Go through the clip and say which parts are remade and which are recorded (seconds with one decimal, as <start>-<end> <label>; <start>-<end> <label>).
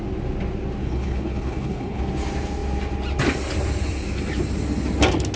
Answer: 0.0-0.8 recorded; 0.8-2.0 remade; 2.0-5.4 recorded